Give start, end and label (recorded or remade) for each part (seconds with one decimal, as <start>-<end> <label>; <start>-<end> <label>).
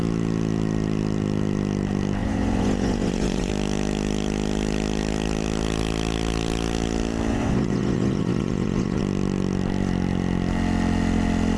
0.0-2.2 recorded; 2.2-3.5 remade; 3.5-7.3 recorded; 7.3-9.0 remade; 9.0-11.6 recorded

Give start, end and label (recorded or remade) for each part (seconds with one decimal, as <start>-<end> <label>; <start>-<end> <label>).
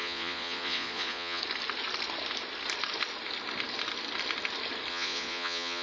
0.0-1.4 remade; 1.4-4.9 recorded; 4.9-5.8 remade